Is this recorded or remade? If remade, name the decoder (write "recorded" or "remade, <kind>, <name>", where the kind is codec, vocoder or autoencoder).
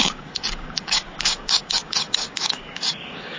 remade, codec, DAC